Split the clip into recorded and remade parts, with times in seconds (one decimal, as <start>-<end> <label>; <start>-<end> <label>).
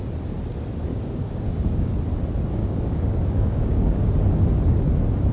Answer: 0.0-0.9 recorded; 0.9-1.9 remade; 1.9-2.6 recorded; 2.6-4.1 remade; 4.1-5.3 recorded